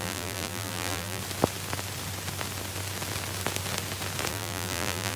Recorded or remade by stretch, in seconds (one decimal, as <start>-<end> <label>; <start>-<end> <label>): 0.0-1.2 remade; 1.2-4.3 recorded; 4.3-5.2 remade